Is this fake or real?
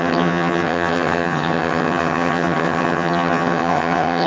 fake